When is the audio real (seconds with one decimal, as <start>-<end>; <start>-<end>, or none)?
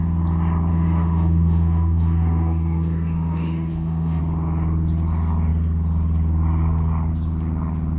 0.0-0.7; 4.2-8.0